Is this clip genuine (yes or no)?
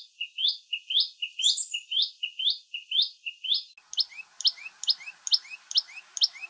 yes